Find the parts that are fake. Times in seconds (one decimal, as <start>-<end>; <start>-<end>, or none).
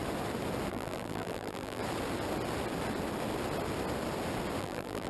0.7-1.8; 4.6-5.1